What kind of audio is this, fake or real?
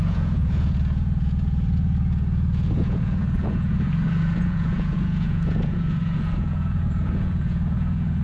fake